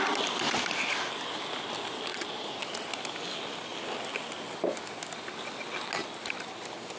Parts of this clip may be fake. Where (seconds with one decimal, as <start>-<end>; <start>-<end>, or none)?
2.1-2.6